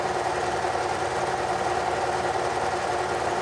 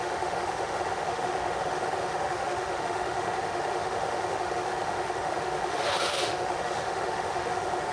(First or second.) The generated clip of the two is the second